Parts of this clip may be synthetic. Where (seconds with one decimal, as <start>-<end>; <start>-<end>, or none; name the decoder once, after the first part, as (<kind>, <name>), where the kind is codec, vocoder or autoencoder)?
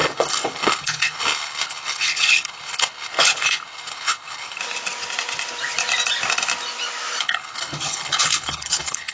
0.0-4.6 (codec, HILCodec); 7.2-9.1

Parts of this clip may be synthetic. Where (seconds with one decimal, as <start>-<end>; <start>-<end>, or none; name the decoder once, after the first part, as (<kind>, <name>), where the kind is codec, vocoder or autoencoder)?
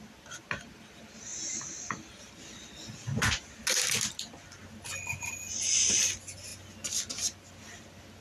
none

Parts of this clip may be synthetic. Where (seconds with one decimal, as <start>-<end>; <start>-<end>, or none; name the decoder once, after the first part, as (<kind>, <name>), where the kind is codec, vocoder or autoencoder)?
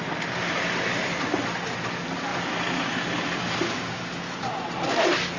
none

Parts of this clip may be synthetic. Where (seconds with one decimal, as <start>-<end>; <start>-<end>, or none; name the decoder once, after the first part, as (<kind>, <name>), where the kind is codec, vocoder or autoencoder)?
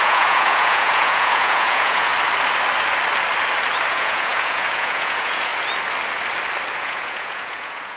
0.0-2.1 (vocoder, Vocos); 3.9-5.5; 6.8-8.0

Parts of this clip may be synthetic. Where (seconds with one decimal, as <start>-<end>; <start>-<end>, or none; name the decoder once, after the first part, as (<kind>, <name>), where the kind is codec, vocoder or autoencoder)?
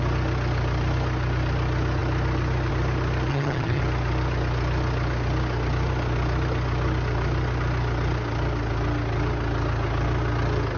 3.3-3.8 (vocoder, HiFi-GAN)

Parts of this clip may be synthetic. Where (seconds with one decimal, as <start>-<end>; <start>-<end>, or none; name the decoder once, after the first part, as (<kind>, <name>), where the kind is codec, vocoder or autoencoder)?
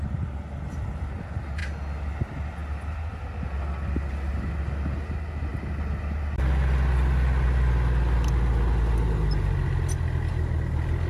none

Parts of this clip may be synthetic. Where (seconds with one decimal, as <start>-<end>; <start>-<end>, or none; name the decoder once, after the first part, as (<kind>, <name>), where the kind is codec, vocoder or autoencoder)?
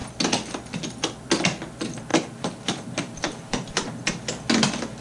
2.1-4.2 (vocoder, BigVGAN v2)